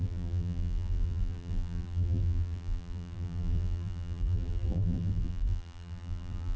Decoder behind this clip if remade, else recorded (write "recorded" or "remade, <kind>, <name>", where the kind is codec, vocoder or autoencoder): remade, vocoder, BigVGAN v2